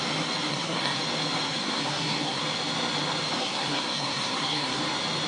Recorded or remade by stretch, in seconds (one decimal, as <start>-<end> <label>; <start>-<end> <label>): 0.0-0.5 recorded; 0.5-1.0 remade; 1.0-1.6 recorded; 1.6-2.4 remade; 2.4-3.4 recorded; 3.4-4.8 remade; 4.8-5.3 recorded